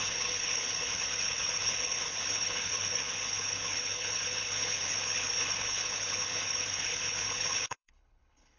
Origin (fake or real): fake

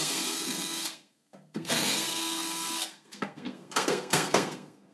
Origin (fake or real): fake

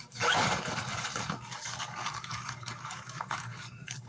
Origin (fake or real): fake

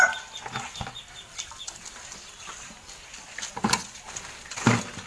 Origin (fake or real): real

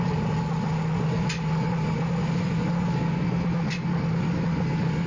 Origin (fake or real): real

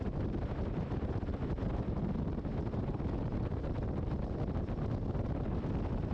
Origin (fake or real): real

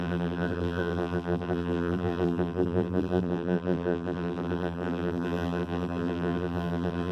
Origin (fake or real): fake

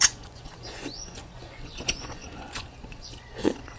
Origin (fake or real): fake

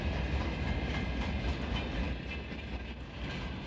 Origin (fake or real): real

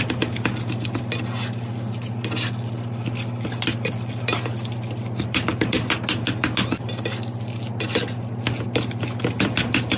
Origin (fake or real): real